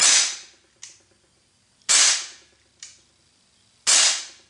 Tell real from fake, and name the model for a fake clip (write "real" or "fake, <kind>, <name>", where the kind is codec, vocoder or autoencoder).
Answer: real